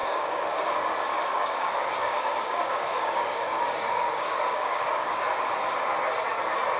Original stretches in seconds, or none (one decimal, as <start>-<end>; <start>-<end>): 0.7-1.1; 5.2-6.8